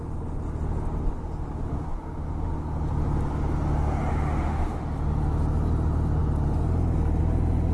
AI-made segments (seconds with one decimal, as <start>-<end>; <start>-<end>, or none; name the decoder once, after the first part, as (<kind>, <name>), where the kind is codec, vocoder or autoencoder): 1.7-2.5 (autoencoder, DAC-VAE); 4.1-4.8